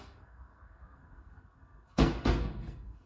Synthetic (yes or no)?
yes